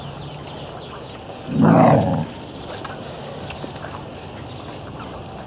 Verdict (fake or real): real